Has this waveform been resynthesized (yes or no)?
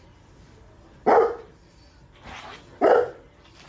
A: no